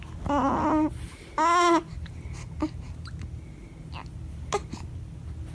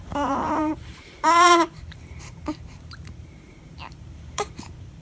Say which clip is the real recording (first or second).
first